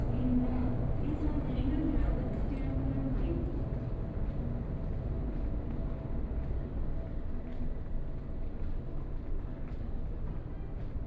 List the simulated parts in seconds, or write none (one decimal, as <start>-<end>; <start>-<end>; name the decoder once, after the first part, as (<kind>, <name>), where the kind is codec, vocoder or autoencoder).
none